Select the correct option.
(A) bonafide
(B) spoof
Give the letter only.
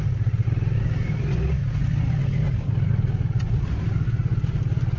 A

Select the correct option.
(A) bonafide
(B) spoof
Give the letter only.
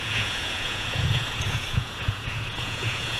B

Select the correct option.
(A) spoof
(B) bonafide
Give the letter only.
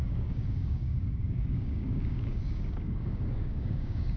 A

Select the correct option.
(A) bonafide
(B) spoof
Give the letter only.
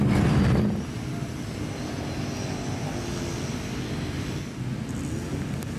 A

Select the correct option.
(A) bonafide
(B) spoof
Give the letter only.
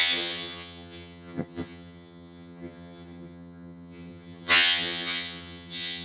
B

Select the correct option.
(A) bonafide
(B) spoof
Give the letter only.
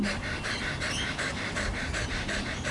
A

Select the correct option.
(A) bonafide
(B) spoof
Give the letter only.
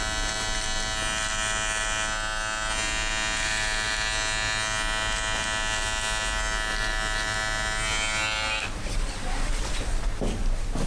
A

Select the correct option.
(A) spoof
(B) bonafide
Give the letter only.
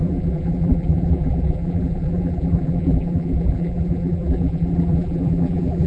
A